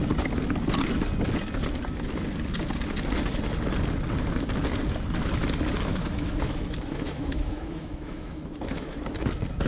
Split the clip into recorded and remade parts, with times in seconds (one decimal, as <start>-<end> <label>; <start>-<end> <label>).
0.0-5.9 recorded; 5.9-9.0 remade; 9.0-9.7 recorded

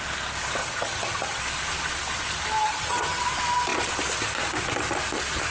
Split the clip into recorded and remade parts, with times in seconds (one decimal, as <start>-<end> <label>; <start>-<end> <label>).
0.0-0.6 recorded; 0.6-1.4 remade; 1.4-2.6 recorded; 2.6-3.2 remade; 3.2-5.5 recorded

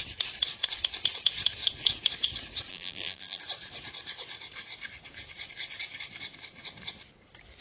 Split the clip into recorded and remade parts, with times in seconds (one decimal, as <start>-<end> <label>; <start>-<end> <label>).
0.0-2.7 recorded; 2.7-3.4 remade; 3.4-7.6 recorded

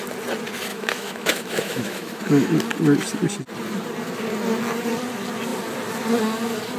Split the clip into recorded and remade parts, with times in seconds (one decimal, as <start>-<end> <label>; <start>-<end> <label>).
0.0-0.7 recorded; 0.7-2.2 remade; 2.2-6.8 recorded